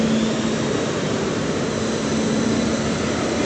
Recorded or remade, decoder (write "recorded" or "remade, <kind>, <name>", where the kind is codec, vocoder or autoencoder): recorded